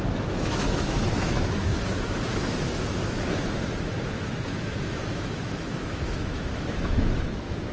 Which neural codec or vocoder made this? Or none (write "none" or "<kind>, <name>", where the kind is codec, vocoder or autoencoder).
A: autoencoder, DAC-VAE